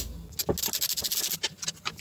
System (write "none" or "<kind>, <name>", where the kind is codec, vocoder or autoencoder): none